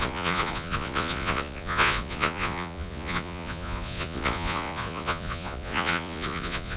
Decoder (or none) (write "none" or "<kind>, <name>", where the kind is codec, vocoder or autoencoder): vocoder, Vocos